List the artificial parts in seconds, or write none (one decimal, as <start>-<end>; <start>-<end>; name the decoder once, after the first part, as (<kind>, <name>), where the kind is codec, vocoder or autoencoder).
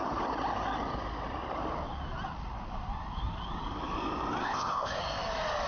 4.4-5.0 (codec, ZipCodec)